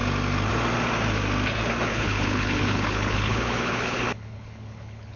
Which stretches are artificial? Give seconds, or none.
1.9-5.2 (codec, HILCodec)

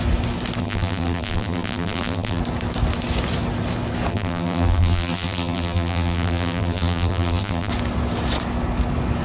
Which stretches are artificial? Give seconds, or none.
0.6-2.4 (vocoder, BigVGAN v2); 4.1-7.7

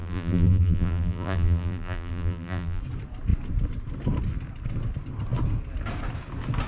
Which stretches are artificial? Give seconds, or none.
0.0-2.8 (vocoder, BigVGAN v2)